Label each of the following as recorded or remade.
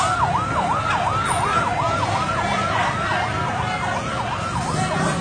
recorded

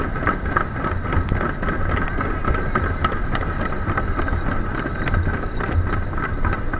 recorded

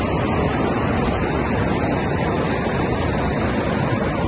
recorded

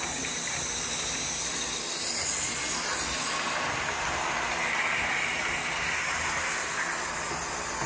recorded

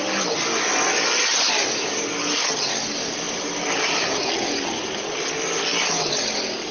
recorded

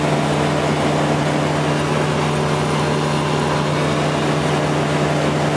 recorded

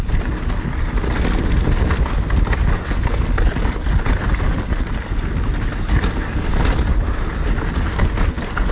recorded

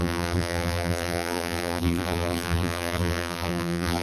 remade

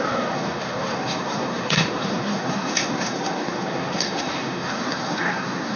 remade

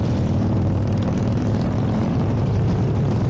remade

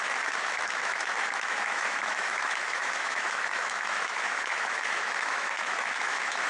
remade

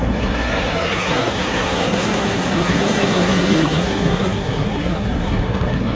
remade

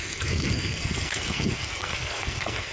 remade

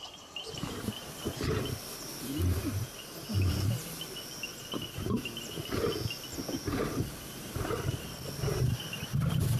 recorded